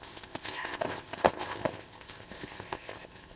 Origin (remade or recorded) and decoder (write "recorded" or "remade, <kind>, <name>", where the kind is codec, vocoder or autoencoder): remade, codec, ZipCodec